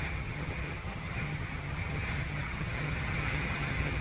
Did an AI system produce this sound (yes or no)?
yes